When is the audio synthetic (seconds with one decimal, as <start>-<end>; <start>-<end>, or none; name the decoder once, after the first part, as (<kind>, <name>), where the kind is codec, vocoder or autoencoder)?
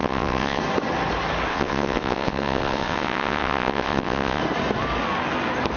0.0-0.6 (vocoder, WaveNeXt); 1.5-4.4